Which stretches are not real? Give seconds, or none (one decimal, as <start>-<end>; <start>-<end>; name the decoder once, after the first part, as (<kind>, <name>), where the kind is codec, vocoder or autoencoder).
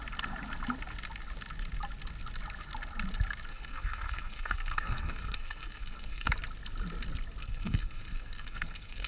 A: 3.5-6.3 (codec, SNAC); 7.4-9.1